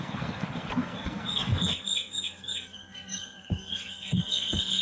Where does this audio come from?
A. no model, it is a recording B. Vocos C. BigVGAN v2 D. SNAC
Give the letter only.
D